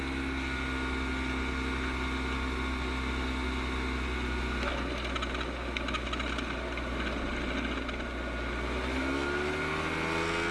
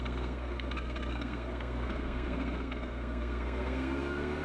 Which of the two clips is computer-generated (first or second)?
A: second